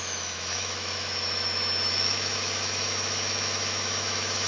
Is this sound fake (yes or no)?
yes